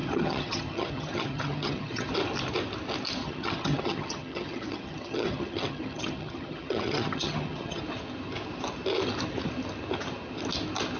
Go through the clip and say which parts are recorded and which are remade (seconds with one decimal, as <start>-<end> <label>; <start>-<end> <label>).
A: 0.0-2.1 remade; 2.1-3.2 recorded; 3.2-7.8 remade; 7.8-11.0 recorded